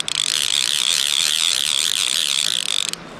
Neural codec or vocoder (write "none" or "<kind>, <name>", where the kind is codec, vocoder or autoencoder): none